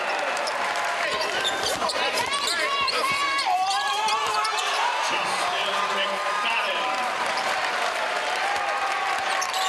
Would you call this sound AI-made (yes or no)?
yes